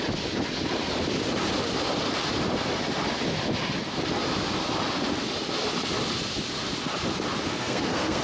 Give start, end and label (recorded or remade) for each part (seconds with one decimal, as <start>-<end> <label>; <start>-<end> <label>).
0.0-7.5 recorded; 7.5-8.2 remade